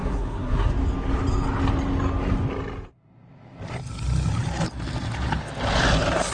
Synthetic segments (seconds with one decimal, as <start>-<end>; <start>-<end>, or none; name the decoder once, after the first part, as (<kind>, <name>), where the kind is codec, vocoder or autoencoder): 0.0-0.7 (codec, SNAC)